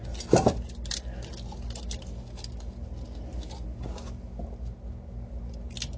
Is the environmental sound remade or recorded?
recorded